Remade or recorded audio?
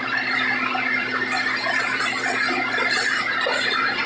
remade